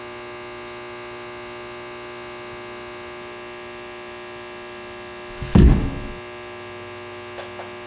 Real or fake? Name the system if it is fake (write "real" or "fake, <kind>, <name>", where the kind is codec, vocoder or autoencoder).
real